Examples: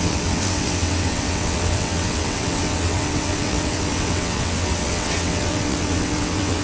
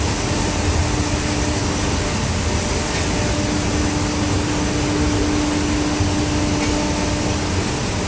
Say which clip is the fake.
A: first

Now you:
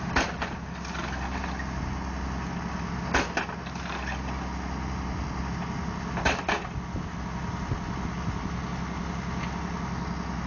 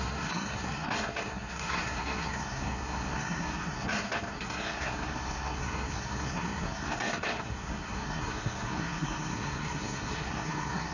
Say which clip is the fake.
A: second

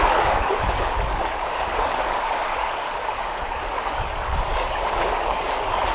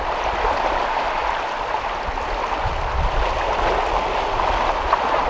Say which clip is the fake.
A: first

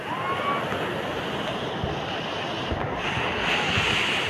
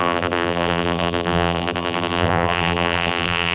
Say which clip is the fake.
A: second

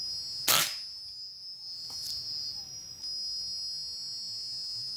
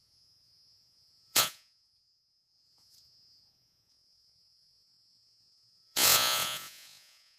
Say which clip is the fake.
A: second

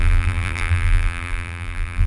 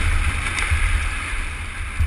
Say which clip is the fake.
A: first